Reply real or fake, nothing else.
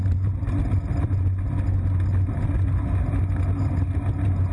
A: real